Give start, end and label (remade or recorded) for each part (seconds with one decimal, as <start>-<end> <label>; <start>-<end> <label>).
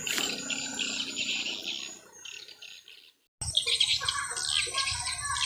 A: 0.0-5.5 recorded